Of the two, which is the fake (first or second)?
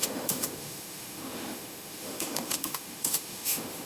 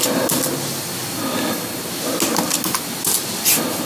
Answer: first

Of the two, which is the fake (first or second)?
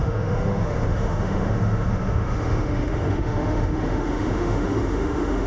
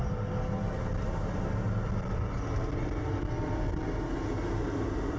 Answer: first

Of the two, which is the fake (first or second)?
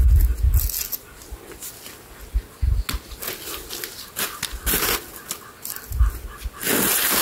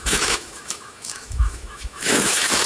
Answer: second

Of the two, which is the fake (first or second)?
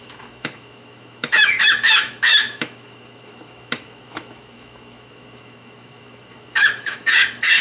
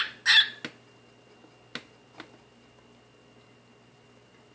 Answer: first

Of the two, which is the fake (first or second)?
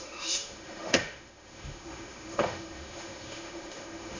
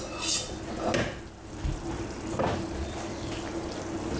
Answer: first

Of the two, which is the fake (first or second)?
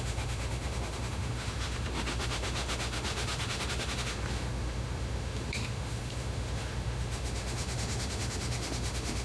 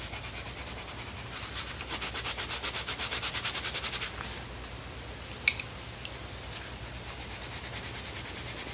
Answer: first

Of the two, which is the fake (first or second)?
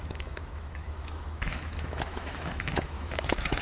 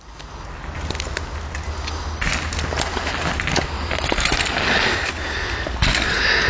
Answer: first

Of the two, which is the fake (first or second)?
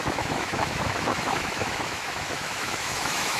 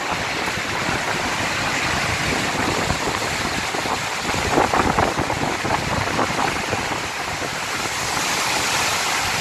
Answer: first